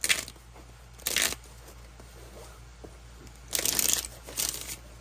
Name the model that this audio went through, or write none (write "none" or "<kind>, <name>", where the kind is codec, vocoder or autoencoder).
none